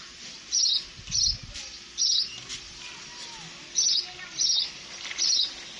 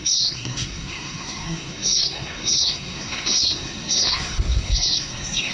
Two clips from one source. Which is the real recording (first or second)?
first